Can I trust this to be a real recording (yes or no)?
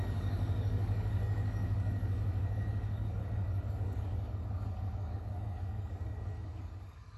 no